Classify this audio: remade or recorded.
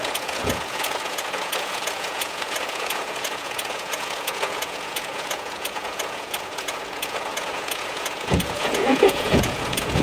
remade